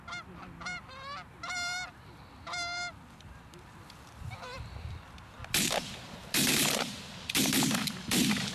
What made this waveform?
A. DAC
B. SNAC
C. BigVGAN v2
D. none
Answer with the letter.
C